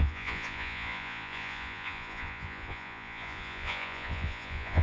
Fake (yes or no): yes